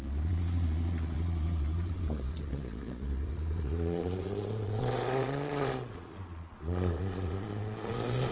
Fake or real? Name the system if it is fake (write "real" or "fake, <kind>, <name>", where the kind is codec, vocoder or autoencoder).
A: fake, vocoder, Vocos